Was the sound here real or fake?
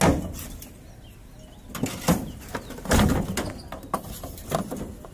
real